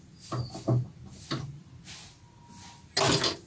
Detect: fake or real real